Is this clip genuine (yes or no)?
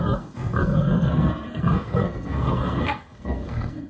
no